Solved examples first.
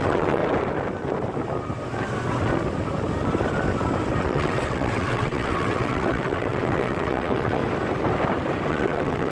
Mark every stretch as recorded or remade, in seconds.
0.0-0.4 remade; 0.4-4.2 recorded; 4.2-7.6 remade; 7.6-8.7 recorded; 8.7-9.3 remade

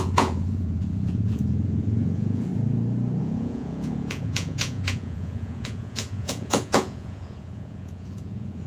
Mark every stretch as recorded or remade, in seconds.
0.0-2.5 remade; 2.5-3.2 recorded; 3.2-8.7 remade

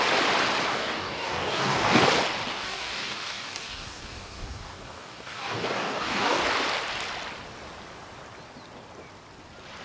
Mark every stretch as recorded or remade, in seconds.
0.0-0.7 recorded; 0.7-2.0 remade; 2.0-2.5 recorded; 2.5-6.4 remade; 6.4-9.8 recorded

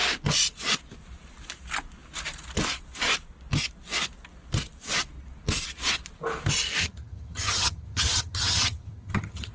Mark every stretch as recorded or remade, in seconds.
0.0-6.8 recorded; 6.8-9.5 remade